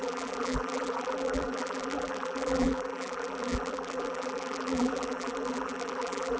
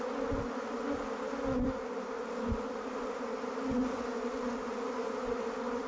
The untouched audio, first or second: second